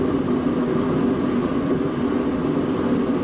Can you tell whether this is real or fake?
real